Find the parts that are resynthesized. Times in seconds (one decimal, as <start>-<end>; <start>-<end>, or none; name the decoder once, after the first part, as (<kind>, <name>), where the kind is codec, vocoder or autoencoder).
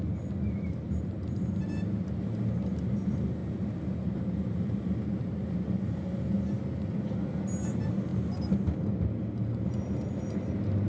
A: none